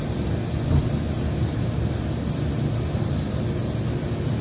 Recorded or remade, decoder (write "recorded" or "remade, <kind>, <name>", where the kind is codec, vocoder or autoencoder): recorded